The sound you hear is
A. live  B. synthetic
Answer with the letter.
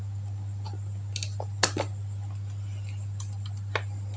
A